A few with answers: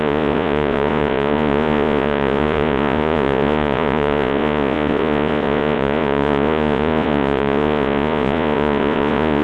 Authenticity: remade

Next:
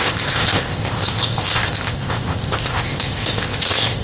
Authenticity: remade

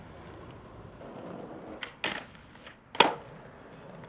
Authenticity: recorded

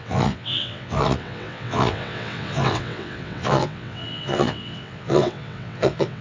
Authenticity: remade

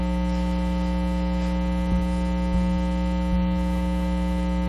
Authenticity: recorded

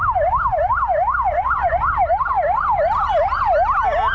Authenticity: recorded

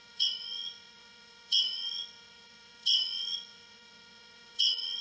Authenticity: remade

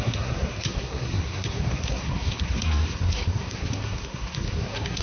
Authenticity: remade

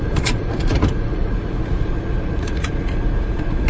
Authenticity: remade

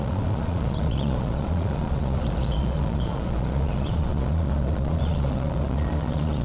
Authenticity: remade